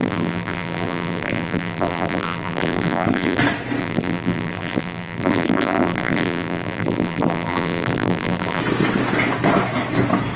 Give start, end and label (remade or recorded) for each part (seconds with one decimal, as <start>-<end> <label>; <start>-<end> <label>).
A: 0.0-3.4 remade; 3.4-3.8 recorded; 3.8-8.6 remade; 8.6-10.4 recorded